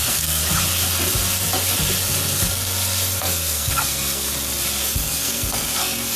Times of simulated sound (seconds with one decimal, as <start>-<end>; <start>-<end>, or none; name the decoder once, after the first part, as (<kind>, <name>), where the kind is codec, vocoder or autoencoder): 0.0-0.4 (codec, SNAC); 3.2-4.3; 4.8-6.2